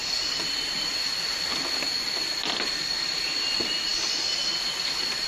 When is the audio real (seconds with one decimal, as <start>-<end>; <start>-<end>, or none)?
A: 0.0-5.3